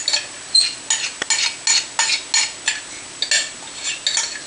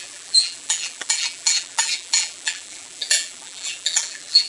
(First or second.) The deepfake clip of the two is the second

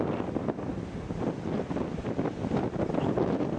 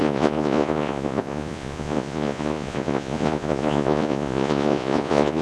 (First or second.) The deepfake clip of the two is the second